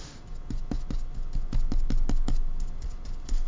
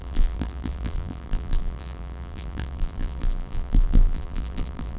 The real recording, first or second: first